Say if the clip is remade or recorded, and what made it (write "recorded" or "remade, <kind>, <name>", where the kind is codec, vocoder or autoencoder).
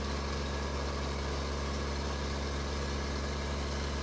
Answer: recorded